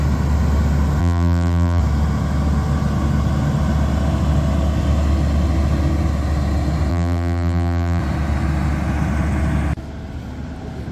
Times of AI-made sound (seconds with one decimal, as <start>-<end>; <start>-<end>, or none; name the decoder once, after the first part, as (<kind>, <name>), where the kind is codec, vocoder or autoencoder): 1.0-1.8 (vocoder, BigVGAN v2); 6.9-8.0